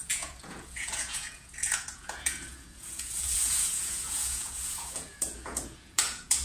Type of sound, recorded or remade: remade